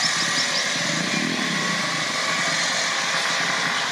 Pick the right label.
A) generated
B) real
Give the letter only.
B